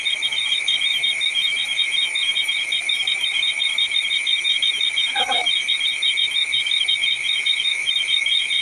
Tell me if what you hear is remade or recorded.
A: remade